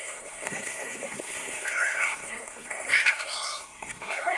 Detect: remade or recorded remade